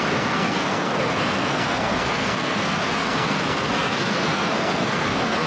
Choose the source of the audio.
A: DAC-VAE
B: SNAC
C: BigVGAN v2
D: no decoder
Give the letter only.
B